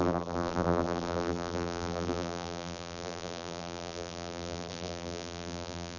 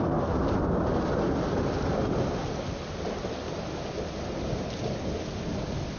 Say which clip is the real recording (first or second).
second